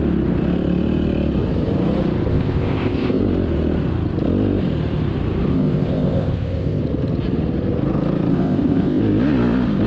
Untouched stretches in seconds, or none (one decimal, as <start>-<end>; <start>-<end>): 0.0-2.3; 3.2-5.5; 6.8-8.3; 9.0-9.9